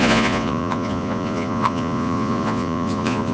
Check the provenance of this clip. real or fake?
fake